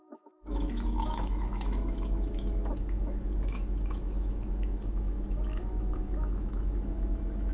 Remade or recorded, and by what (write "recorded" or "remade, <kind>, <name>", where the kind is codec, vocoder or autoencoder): remade, autoencoder, DAC-VAE